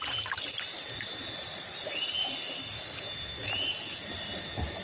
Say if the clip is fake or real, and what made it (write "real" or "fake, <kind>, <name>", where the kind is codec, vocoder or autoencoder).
fake, vocoder, BigVGAN v2